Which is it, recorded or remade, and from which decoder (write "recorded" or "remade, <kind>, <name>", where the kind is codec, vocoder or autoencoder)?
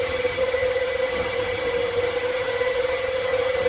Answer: remade, vocoder, HiFi-GAN